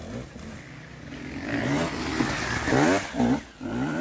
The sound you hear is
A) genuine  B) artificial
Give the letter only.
A